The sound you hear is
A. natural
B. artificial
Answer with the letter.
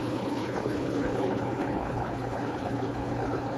B